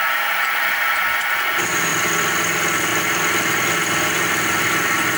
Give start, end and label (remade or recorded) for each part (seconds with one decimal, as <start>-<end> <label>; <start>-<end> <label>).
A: 0.0-5.2 recorded